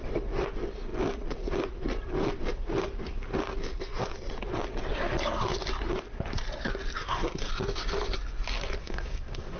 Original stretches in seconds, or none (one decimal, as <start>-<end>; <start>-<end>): 0.0-7.0; 7.5-8.8